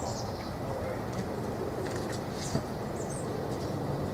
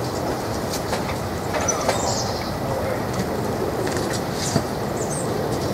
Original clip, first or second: first